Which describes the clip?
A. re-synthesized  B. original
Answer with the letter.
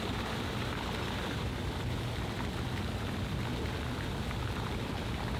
B